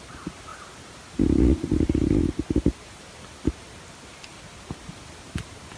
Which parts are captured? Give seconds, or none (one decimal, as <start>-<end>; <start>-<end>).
0.0-5.8